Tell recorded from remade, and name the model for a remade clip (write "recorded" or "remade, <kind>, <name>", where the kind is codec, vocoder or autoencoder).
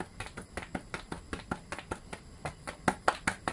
recorded